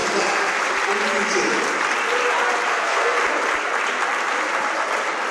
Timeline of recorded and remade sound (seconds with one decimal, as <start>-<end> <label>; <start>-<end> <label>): 0.0-2.7 recorded; 2.7-3.2 remade; 3.2-5.3 recorded